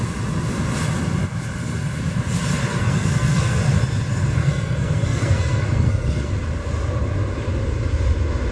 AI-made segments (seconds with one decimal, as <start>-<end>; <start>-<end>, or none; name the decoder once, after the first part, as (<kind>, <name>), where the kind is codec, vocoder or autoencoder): 2.7-3.6 (codec, SNAC); 4.4-6.3